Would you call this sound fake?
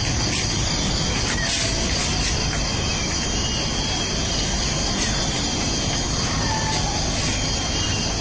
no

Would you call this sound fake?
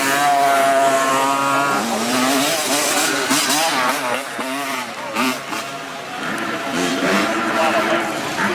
yes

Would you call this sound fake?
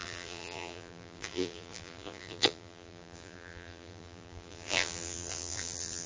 yes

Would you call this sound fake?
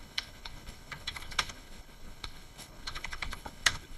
yes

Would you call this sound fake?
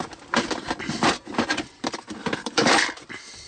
yes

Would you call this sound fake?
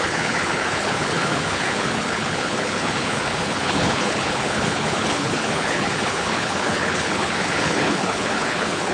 yes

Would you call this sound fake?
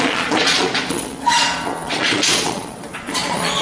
yes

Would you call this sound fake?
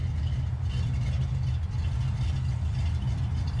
no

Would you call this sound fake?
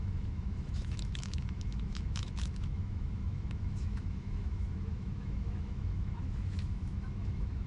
yes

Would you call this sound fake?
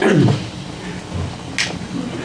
no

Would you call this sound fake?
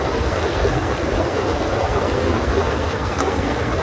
yes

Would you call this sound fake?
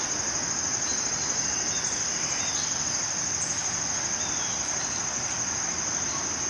no